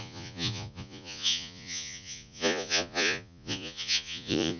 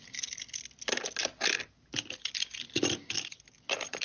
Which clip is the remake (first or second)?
first